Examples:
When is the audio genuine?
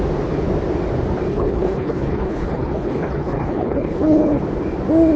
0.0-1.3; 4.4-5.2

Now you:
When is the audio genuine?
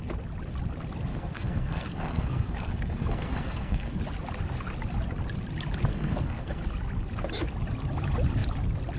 0.0-1.1; 4.0-5.9; 6.6-9.0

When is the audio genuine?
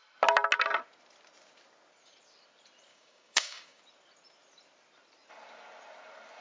0.0-2.9; 3.8-6.4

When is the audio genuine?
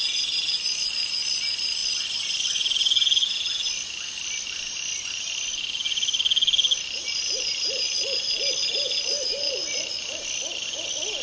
0.0-11.2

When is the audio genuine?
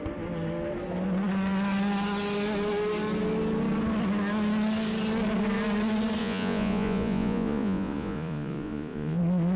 0.0-6.2; 9.2-9.6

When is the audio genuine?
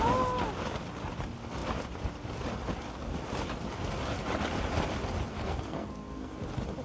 0.0-5.3; 6.3-6.8